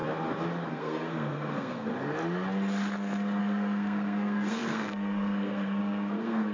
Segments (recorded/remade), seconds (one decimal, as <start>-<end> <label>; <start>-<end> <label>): 0.0-0.7 recorded; 0.7-1.9 remade; 1.9-3.4 recorded; 3.4-6.5 remade